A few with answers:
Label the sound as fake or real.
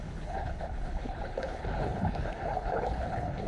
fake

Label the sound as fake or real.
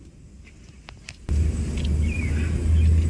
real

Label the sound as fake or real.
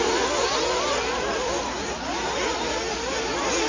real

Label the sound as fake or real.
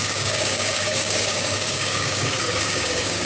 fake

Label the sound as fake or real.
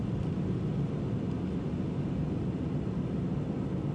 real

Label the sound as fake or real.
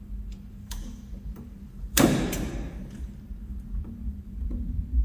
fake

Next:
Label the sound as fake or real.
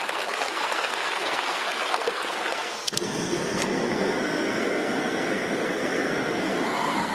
fake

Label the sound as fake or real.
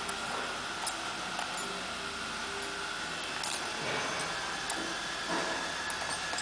real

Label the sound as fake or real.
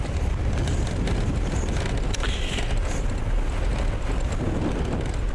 real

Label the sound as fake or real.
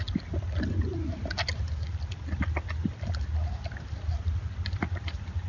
real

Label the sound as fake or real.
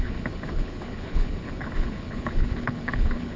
fake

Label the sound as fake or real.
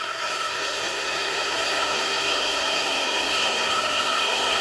fake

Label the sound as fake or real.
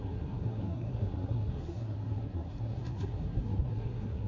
fake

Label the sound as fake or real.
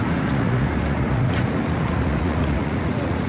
fake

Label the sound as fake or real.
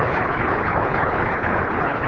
fake